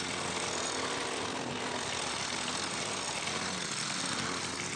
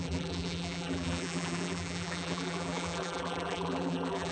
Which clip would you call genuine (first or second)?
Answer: first